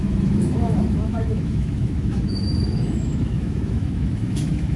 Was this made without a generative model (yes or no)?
no